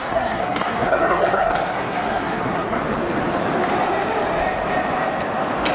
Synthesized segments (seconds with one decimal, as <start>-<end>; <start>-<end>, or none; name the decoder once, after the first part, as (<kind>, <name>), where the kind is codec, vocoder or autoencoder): 0.0-2.8 (codec, SNAC)